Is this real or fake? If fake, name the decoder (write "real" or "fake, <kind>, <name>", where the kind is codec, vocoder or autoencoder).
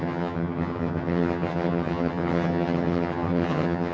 fake, vocoder, HiFi-GAN